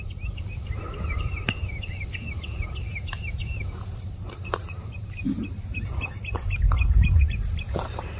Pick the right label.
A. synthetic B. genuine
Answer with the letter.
A